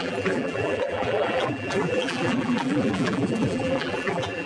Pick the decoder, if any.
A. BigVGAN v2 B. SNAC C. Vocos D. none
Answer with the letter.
A